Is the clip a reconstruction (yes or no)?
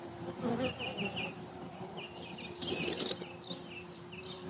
no